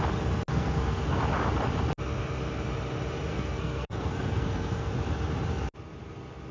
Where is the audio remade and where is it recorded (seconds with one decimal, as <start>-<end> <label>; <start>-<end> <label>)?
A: 0.0-0.5 recorded; 0.5-1.2 remade; 1.2-3.3 recorded; 3.3-4.9 remade; 4.9-6.5 recorded